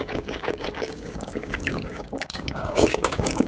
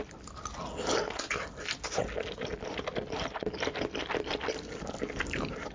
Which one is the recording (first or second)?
second